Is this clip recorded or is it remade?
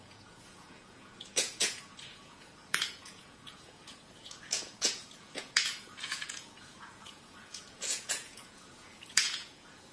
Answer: remade